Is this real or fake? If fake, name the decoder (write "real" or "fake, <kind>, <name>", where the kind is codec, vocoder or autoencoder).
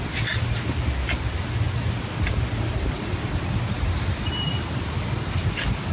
real